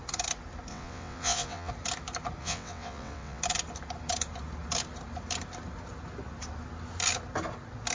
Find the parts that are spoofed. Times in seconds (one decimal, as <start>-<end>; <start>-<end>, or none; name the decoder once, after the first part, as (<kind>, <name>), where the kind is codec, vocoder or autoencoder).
0.7-1.7 (vocoder, WaveNeXt); 2.4-3.4